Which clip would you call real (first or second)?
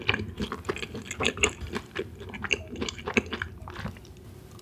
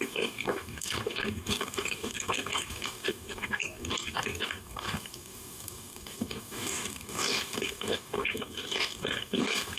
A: first